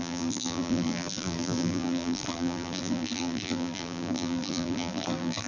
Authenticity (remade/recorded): remade